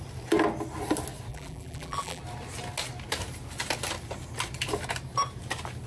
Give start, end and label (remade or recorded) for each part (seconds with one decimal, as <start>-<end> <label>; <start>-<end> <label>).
0.0-1.3 recorded; 1.3-2.2 remade; 2.2-5.9 recorded